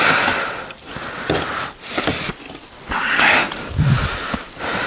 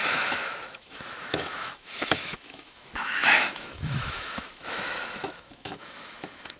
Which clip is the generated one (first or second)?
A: second